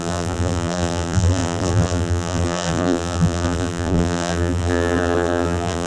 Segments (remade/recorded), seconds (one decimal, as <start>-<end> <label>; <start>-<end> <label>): 0.0-5.9 remade